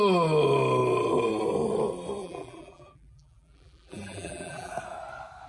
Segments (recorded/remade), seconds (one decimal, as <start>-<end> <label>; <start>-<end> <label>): 0.0-2.2 recorded; 2.2-4.7 remade; 4.7-5.5 recorded